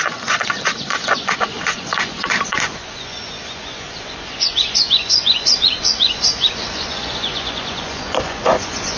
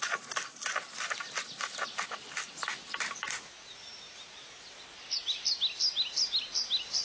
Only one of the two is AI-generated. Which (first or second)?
first